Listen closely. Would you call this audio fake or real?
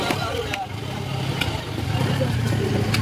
real